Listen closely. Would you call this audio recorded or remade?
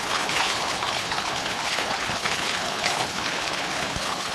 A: remade